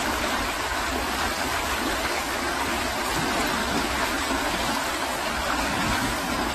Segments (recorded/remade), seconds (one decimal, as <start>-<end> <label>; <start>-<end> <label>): 0.0-0.7 recorded; 0.7-2.9 remade; 2.9-3.6 recorded; 3.6-6.5 remade